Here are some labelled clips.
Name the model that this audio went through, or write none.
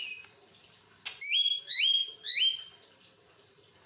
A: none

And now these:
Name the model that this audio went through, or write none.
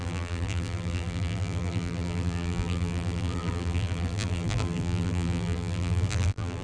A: vocoder, BigVGAN v2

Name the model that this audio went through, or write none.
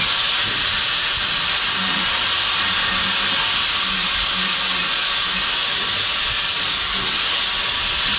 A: none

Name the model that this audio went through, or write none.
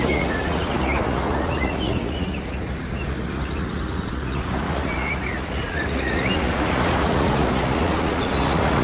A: vocoder, Vocos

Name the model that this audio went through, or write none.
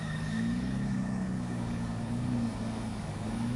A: codec, DAC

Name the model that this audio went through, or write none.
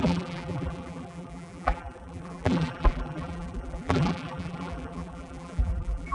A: vocoder, BigVGAN v2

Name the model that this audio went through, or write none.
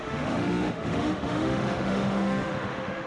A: autoencoder, DAC-VAE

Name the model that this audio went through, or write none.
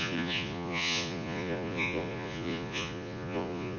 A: vocoder, Vocos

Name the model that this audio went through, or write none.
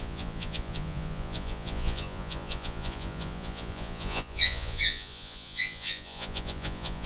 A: vocoder, Vocos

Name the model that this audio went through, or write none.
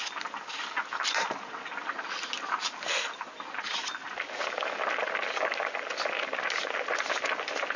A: none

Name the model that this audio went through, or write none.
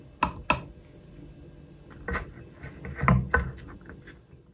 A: none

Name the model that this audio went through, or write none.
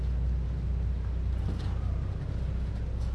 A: none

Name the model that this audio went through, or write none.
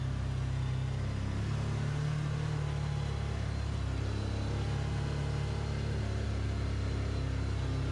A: none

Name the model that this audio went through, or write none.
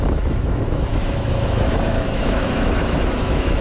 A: autoencoder, DAC-VAE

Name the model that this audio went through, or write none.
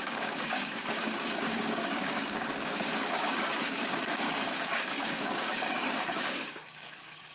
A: codec, DAC